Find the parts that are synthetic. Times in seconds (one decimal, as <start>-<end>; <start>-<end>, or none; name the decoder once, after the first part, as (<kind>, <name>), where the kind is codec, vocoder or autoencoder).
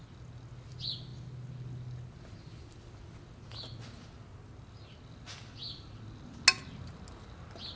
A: none